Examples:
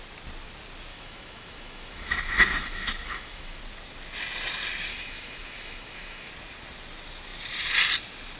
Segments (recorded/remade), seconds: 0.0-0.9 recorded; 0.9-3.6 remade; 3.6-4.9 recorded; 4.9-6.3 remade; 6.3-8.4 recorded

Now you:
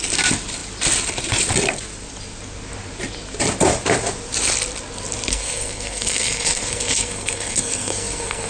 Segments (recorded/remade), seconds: 0.0-5.3 recorded; 5.3-8.5 remade

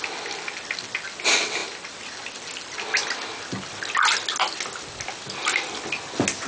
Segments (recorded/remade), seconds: 0.0-6.5 recorded